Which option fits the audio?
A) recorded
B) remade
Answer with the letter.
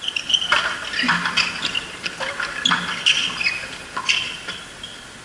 A